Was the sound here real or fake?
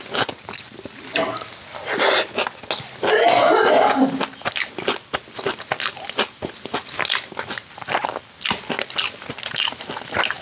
real